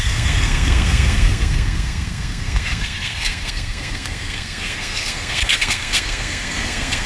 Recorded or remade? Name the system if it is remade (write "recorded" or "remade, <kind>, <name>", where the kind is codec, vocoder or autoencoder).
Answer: remade, codec, SNAC